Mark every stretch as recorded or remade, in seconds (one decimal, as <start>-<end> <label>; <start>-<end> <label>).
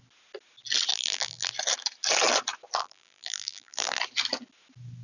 0.0-0.9 recorded; 0.9-1.5 remade; 1.5-2.8 recorded; 2.8-4.0 remade; 4.0-5.0 recorded